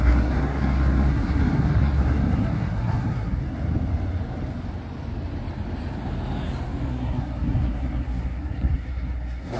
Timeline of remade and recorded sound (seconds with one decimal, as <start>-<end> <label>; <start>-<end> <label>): 0.0-3.4 remade; 3.4-6.9 recorded; 6.9-9.6 remade